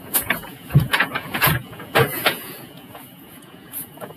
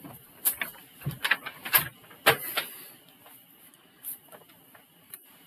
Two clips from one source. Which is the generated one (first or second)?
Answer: first